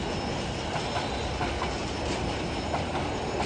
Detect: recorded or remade recorded